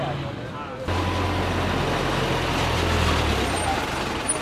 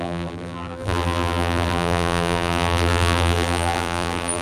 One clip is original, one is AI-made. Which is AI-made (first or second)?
second